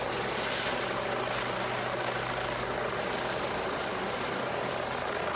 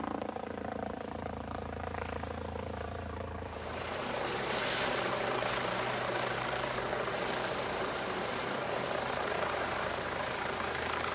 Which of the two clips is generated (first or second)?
second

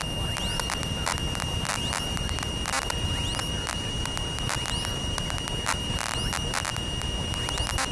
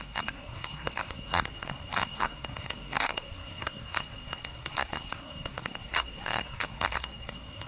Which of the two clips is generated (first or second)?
second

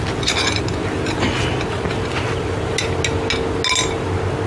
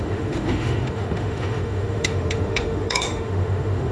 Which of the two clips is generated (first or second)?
second